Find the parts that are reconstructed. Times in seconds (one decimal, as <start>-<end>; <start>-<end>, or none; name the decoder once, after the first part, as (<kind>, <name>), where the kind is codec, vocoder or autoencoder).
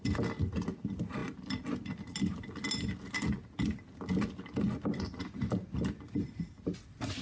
none